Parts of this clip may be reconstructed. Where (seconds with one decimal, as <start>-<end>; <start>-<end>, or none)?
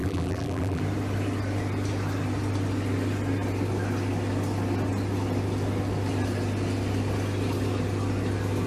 0.0-0.8